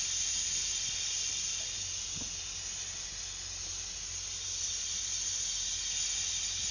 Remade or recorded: recorded